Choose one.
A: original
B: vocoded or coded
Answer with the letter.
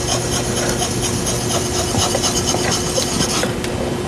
A